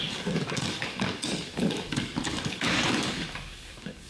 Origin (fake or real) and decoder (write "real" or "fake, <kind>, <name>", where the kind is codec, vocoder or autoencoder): fake, codec, DAC